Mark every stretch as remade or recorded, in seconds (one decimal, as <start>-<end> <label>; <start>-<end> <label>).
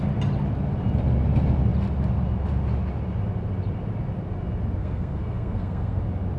0.0-4.8 recorded; 4.8-6.0 remade; 6.0-6.4 recorded